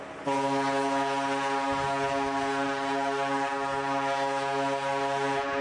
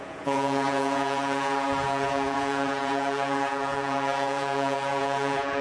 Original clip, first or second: first